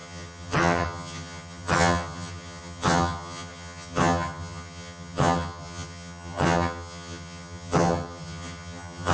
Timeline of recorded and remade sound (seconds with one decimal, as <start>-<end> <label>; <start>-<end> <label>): 0.0-9.1 remade